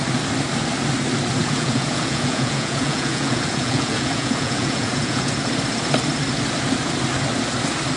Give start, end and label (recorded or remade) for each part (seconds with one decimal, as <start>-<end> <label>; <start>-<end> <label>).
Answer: 0.0-1.4 recorded; 1.4-5.4 remade; 5.4-8.0 recorded